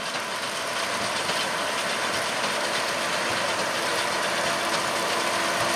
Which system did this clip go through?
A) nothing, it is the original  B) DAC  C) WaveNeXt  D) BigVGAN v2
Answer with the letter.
A